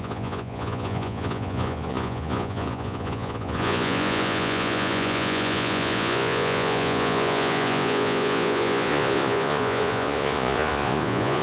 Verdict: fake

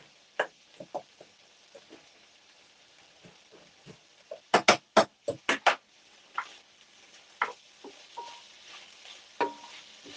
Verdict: real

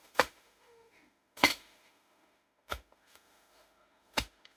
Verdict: fake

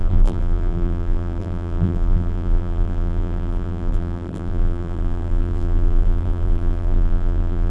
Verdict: fake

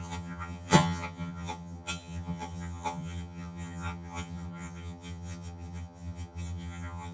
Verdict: fake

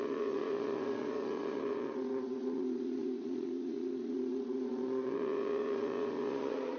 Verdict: fake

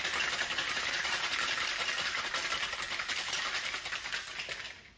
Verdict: real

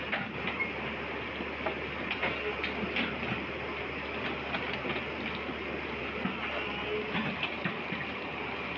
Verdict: real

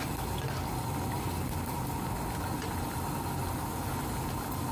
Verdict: real